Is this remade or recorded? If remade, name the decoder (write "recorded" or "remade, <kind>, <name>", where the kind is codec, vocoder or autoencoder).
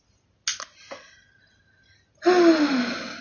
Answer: recorded